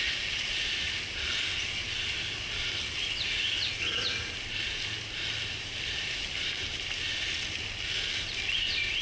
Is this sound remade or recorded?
recorded